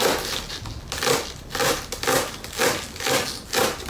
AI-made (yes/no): no